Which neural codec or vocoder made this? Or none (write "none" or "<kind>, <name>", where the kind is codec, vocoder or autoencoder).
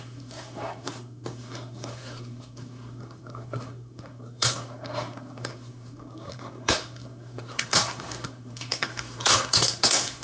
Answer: codec, SNAC